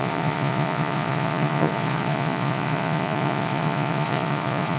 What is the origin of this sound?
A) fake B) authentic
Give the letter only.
A